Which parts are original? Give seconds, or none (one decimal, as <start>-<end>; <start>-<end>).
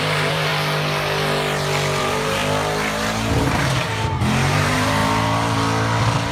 0.5-2.0; 2.4-3.4; 5.0-6.3